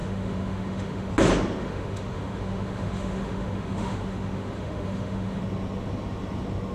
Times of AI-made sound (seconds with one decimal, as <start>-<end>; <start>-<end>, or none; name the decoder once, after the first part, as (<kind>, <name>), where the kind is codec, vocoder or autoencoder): 0.0-1.1 (autoencoder, DAC-VAE); 1.6-5.4